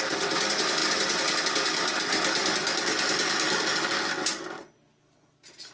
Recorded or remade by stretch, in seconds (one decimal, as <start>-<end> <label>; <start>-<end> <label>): 0.0-5.7 recorded